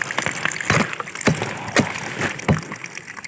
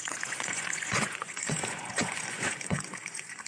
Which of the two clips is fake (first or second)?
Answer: second